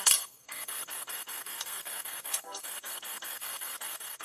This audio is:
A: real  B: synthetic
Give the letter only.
B